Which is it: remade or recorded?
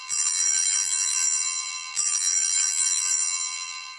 remade